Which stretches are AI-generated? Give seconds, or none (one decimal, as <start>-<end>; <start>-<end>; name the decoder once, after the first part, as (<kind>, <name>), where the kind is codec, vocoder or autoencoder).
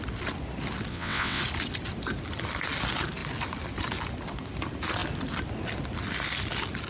0.9-1.4 (vocoder, WaveNeXt)